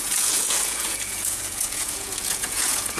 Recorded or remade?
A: remade